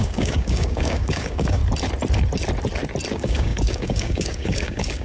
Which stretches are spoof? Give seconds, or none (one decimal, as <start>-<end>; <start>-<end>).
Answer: 0.0-1.6; 3.1-5.0